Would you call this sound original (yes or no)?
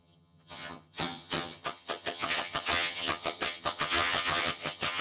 no